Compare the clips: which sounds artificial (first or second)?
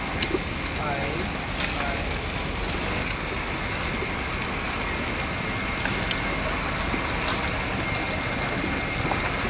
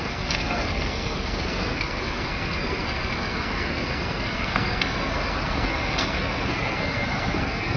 second